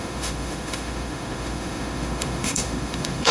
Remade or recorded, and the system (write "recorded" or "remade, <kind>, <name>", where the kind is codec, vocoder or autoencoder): remade, autoencoder, DAC-VAE